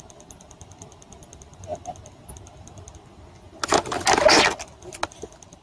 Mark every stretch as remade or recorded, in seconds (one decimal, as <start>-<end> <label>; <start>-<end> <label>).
0.0-5.6 recorded